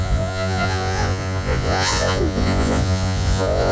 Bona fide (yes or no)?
no